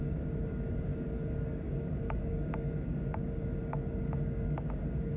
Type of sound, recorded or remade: remade